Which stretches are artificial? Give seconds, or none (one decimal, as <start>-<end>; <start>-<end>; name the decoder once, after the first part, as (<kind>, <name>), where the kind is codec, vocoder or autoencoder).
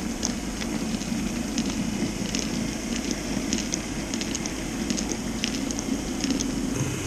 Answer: none